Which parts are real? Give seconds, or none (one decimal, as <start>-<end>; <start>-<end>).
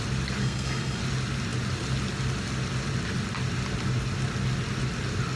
0.0-0.4; 1.0-5.4